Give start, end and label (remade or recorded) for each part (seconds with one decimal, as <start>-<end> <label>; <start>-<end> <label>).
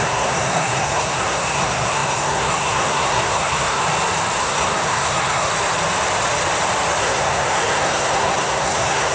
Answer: 0.0-3.8 remade; 3.8-4.4 recorded; 4.4-5.5 remade; 5.5-7.0 recorded; 7.0-9.1 remade